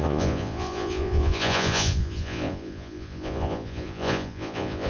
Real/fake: fake